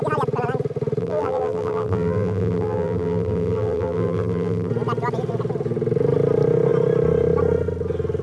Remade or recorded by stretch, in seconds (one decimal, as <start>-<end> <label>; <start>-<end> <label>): 0.0-1.0 recorded; 1.0-4.7 remade; 4.7-8.2 recorded